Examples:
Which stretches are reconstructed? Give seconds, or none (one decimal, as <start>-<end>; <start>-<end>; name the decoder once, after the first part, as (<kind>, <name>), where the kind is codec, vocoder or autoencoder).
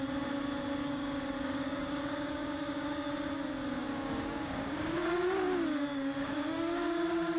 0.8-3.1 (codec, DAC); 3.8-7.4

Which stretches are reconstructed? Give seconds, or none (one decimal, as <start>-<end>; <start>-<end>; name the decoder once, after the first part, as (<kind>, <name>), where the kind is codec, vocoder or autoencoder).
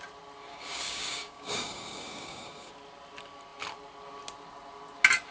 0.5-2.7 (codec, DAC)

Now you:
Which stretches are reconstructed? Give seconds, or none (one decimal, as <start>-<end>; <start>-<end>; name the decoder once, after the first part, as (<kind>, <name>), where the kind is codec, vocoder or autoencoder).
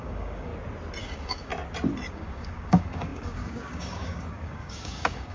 0.0-0.5 (codec, DAC); 1.0-1.5; 2.1-5.3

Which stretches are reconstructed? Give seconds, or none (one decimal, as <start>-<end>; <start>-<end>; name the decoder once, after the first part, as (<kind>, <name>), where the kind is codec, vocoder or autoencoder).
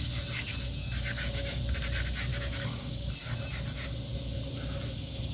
0.8-1.6 (codec, DAC); 2.3-3.1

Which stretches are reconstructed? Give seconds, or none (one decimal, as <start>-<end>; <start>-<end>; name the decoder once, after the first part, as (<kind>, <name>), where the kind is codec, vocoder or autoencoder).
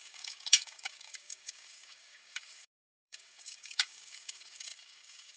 0.0-5.4 (codec, DAC)